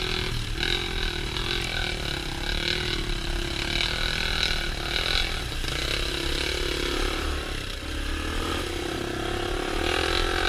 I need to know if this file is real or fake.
real